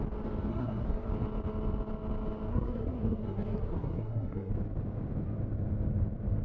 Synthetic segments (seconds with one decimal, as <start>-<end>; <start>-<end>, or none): 0.5-1.1; 2.5-4.5